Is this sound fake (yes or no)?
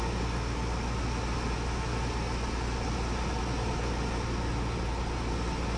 no